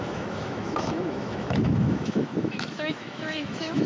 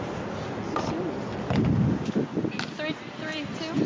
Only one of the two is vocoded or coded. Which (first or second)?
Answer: first